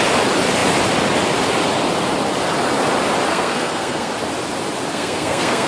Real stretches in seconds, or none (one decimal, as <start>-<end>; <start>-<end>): 0.0-3.3; 4.1-4.9